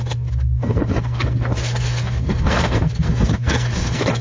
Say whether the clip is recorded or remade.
remade